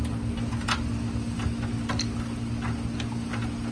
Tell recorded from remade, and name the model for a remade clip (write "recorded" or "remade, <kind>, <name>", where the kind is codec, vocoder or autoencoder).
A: recorded